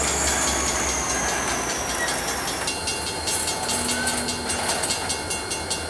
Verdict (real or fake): real